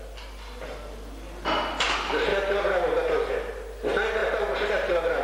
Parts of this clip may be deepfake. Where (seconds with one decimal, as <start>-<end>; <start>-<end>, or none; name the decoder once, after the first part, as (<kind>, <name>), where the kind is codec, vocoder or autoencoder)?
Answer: none